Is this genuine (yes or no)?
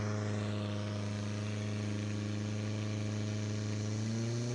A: yes